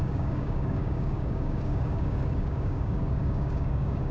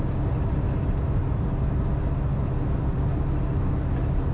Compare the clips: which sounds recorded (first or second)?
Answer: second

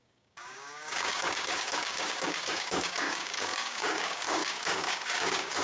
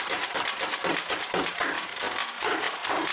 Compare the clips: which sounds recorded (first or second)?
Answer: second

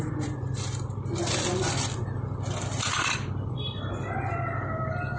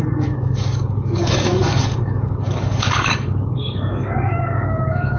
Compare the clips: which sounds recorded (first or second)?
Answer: first